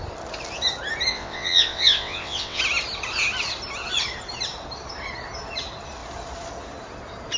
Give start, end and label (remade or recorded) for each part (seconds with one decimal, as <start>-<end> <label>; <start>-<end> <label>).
0.0-1.1 recorded; 1.1-2.6 remade; 2.6-7.4 recorded